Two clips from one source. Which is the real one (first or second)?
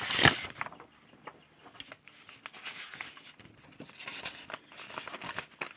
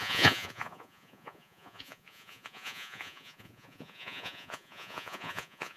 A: first